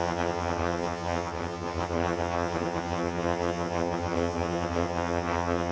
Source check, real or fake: fake